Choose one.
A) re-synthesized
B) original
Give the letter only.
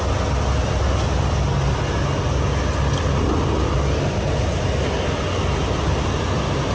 B